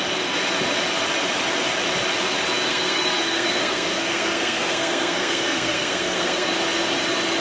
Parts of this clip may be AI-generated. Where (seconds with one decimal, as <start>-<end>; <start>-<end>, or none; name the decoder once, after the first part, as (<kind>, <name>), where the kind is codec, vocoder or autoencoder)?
2.7-6.5 (codec, SNAC)